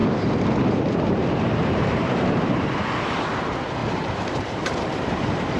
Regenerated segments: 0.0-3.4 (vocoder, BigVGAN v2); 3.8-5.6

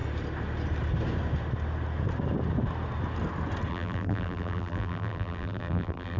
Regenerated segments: 3.7-6.2 (vocoder, BigVGAN v2)

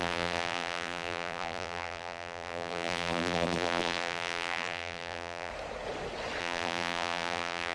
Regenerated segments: 0.0-5.5 (vocoder, BigVGAN v2); 6.4-7.7

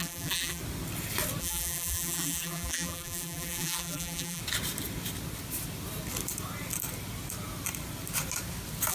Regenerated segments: 0.0-0.6 (vocoder, BigVGAN v2); 1.4-4.4